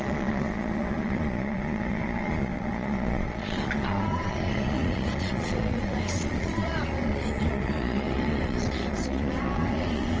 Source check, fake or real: fake